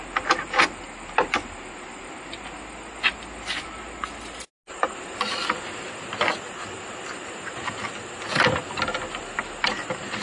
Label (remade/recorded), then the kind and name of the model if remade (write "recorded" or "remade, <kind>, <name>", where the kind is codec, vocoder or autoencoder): recorded